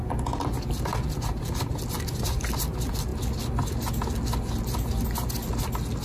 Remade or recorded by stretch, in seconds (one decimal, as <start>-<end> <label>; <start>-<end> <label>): 0.0-6.0 recorded